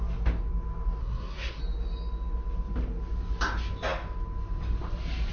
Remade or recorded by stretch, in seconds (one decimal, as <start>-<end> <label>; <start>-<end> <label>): 0.0-1.0 recorded; 1.0-1.6 remade; 1.6-5.3 recorded